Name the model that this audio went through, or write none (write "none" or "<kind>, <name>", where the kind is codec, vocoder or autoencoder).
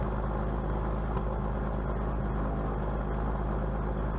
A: none